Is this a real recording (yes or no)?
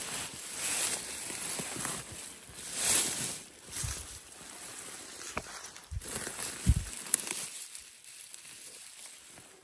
yes